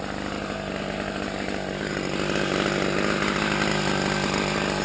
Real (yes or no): yes